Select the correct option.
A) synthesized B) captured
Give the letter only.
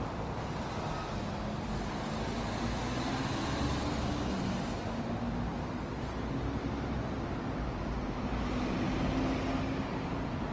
B